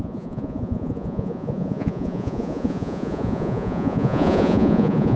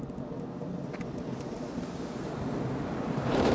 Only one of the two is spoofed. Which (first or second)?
first